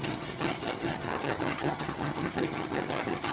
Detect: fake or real fake